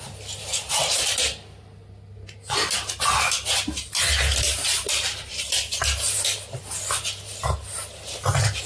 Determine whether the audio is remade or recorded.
recorded